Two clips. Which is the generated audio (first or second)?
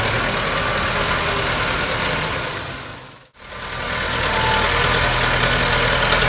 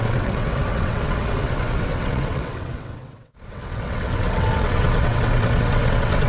second